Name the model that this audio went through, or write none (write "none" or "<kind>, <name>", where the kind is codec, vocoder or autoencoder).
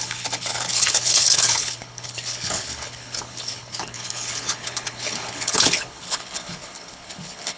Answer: codec, HILCodec